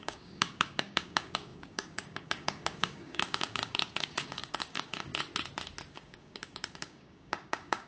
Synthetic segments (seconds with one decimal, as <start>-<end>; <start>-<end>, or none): 0.0-5.1; 5.9-7.9